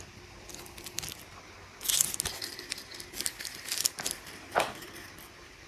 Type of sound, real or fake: real